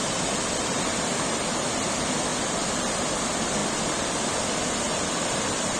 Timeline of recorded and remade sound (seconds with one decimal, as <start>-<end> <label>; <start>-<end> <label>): 0.0-5.8 remade